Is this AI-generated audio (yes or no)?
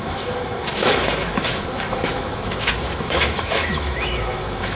yes